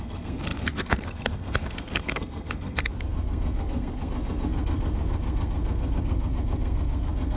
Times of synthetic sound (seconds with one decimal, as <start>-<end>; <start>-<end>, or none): 0.0-7.4